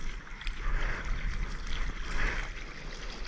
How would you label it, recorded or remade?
recorded